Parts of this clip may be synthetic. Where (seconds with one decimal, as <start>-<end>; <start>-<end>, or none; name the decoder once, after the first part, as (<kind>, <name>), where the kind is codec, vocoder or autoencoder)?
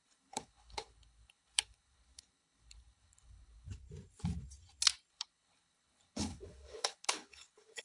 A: 0.0-3.7 (codec, HILCodec); 5.1-7.8